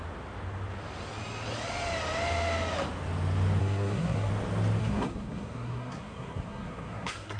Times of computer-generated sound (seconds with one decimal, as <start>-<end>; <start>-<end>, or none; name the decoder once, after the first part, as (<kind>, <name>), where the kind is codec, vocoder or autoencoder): 3.6-4.3 (codec, SNAC); 4.8-7.4